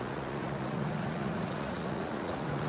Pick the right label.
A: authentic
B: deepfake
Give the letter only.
B